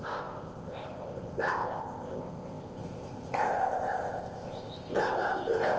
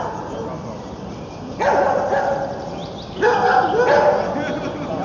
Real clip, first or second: second